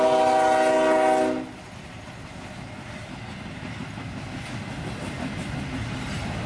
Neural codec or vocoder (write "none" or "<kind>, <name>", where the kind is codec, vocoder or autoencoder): none